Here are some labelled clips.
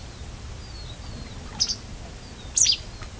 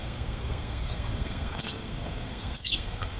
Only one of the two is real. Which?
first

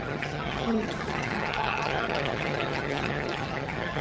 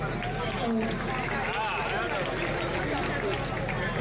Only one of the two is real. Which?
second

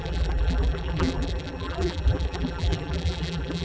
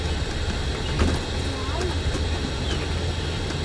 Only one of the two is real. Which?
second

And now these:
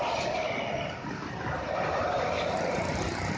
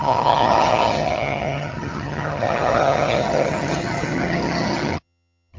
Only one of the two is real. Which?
first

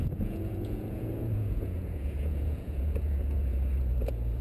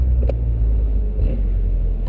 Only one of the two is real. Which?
second